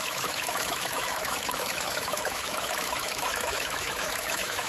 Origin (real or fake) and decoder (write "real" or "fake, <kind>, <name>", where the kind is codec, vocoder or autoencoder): fake, autoencoder, DAC-VAE